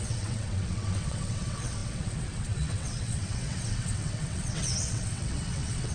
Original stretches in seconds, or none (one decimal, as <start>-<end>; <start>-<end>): none